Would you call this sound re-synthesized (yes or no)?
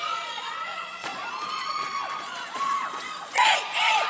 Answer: yes